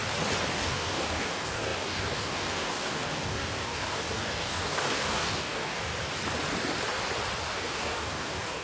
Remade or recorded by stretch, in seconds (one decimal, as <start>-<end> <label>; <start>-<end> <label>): 0.0-0.5 recorded; 0.5-5.9 remade; 5.9-7.4 recorded; 7.4-8.6 remade